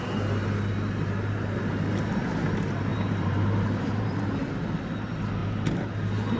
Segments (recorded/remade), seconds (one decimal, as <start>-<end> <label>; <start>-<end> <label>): 0.0-2.9 recorded; 2.9-4.2 remade; 4.2-5.4 recorded; 5.4-5.9 remade; 5.9-6.4 recorded